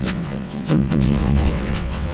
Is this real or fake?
fake